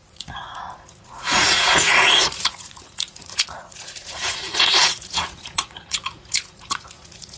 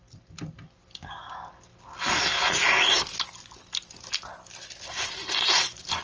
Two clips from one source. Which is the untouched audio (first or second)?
second